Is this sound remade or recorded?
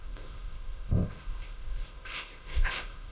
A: remade